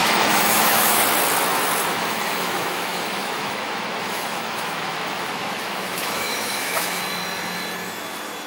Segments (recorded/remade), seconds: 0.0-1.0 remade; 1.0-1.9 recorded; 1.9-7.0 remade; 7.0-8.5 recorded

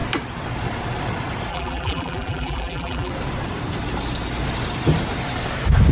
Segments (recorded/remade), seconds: 0.0-1.5 recorded; 1.5-3.1 remade; 3.1-5.9 recorded

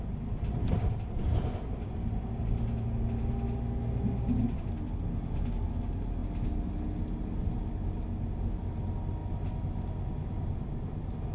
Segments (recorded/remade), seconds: 0.0-11.3 recorded

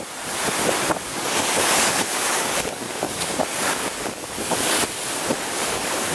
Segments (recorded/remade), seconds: 0.0-1.1 recorded; 1.1-4.8 remade; 4.8-5.5 recorded; 5.5-6.1 remade

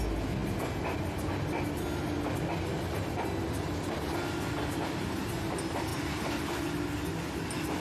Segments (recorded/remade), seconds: 0.0-7.8 recorded